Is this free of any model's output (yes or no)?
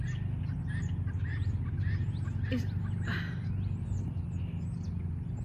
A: yes